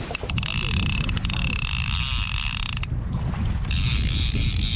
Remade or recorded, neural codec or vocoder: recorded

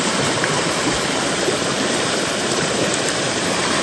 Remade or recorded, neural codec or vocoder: remade, vocoder, BigVGAN v2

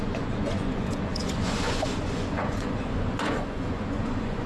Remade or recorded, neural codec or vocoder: remade, vocoder, Vocos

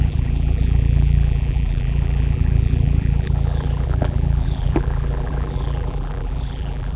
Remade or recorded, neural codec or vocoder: remade, vocoder, BigVGAN v2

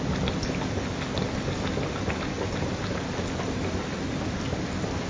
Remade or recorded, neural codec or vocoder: recorded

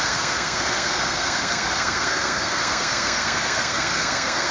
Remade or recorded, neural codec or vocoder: remade, codec, SNAC